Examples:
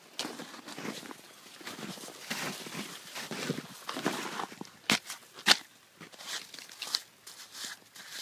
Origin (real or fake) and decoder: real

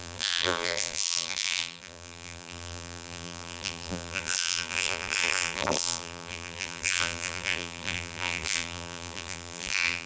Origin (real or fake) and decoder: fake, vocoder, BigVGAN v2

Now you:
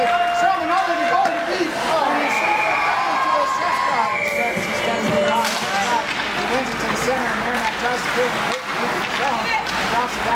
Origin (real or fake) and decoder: real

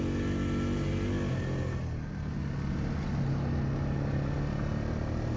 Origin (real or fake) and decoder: real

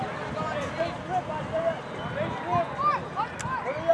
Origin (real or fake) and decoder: real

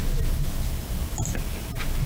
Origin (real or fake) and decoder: real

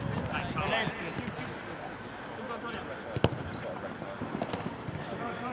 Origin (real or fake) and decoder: real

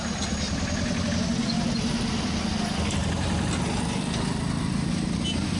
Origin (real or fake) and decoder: real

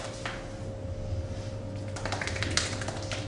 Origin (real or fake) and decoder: real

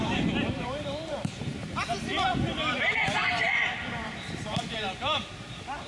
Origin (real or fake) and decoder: fake, vocoder, BigVGAN v2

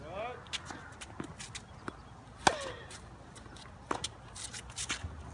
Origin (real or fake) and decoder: real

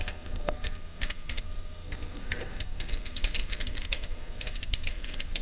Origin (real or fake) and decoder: fake, codec, SNAC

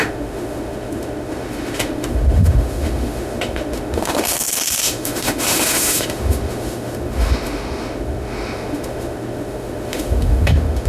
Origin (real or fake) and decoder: fake, autoencoder, DAC-VAE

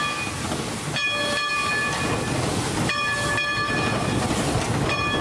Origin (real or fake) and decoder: real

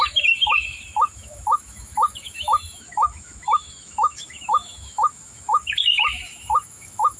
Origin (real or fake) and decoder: fake, autoencoder, DAC-VAE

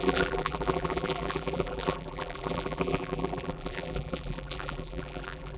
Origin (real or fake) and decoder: fake, vocoder, BigVGAN v2